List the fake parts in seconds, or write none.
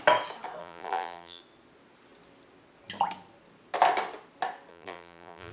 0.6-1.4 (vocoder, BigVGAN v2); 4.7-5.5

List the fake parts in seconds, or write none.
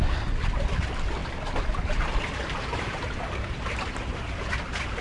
1.2-4.2 (vocoder, BigVGAN v2)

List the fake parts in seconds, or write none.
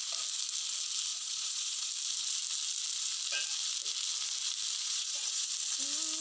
1.1-1.9 (vocoder, Vocos); 4.8-5.5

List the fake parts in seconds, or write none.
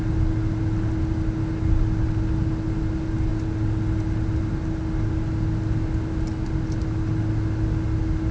none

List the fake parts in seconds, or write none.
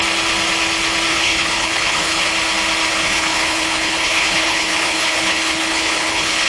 1.1-2.3 (codec, HILCodec); 2.9-6.5